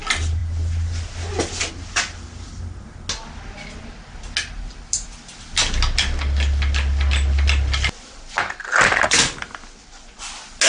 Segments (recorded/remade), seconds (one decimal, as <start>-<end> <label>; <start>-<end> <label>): 0.0-10.7 recorded